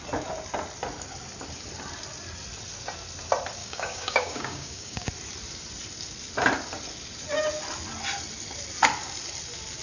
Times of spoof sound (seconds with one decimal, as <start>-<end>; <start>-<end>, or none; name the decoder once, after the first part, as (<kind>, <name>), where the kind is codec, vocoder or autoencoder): 3.6-5.1 (codec, DAC)